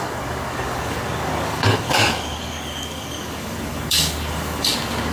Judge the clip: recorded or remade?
remade